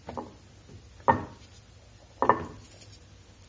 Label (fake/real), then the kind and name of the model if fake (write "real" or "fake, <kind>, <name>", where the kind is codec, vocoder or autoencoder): real